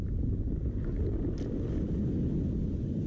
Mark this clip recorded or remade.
recorded